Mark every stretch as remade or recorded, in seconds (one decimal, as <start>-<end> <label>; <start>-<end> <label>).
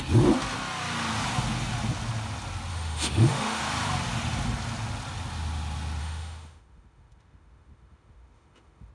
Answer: 0.0-2.7 recorded; 2.7-3.6 remade; 3.6-6.0 recorded; 6.0-8.9 remade